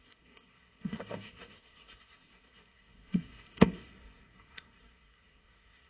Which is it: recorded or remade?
remade